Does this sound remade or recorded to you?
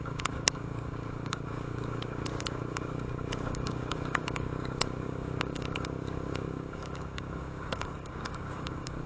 remade